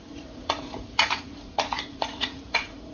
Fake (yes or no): yes